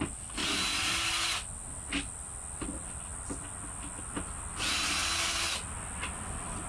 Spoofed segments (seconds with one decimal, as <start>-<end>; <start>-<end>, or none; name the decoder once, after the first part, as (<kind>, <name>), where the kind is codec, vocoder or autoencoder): none